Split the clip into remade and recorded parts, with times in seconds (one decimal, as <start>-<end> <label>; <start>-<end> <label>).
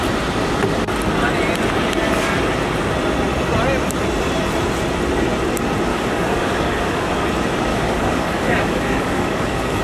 0.0-5.9 recorded; 5.9-7.1 remade; 7.1-7.7 recorded; 7.7-9.8 remade